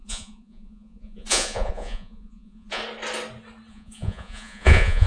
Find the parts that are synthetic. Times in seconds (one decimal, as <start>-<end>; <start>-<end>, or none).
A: 0.0-2.8; 3.7-5.1